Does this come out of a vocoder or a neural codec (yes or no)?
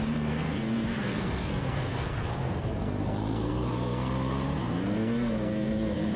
yes